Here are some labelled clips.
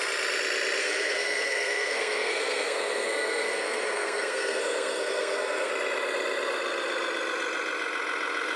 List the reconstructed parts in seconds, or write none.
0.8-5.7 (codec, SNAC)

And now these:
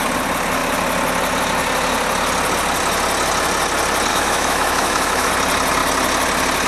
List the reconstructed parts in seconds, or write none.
4.1-5.3 (autoencoder, DAC-VAE)